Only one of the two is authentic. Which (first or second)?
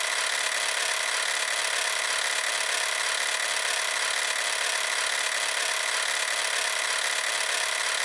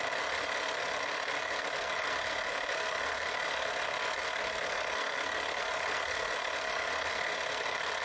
first